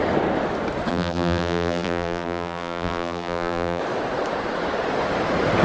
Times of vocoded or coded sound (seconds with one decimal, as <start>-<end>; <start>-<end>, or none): 0.9-3.8